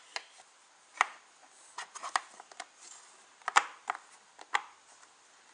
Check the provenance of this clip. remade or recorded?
recorded